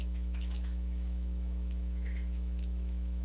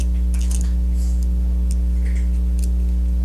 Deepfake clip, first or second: first